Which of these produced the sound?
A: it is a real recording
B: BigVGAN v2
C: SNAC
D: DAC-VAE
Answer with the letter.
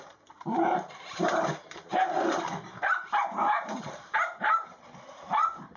B